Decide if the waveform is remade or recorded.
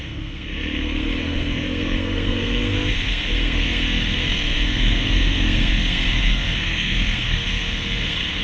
remade